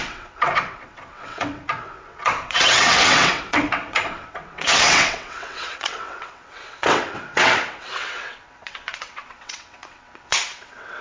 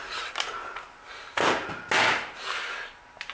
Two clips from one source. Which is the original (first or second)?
second